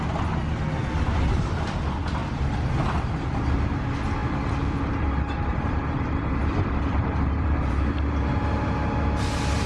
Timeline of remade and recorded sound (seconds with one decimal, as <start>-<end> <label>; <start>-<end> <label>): 0.0-5.5 recorded; 5.5-8.4 remade; 8.4-9.7 recorded